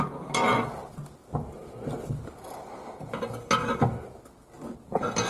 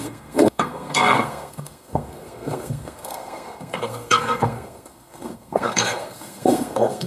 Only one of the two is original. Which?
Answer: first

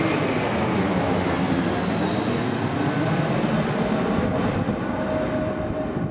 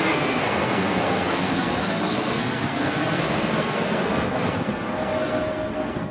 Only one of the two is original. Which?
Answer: first